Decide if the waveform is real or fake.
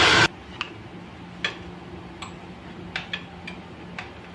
real